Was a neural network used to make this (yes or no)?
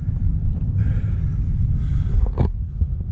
no